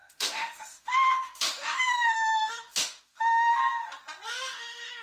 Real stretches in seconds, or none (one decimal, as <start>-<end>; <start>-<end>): 3.6-4.3